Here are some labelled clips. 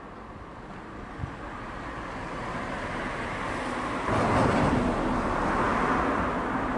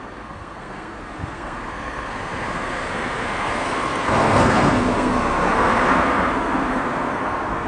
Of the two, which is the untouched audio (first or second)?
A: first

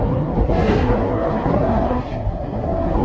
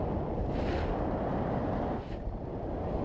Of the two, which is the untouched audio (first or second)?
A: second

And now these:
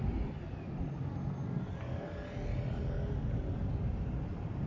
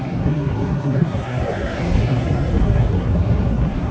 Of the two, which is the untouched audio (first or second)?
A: first